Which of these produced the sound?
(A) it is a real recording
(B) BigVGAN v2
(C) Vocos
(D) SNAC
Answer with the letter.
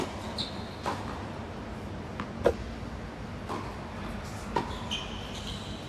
A